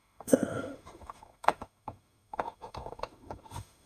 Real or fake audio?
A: fake